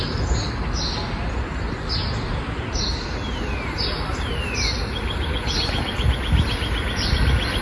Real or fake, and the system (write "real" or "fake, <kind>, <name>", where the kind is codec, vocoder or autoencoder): real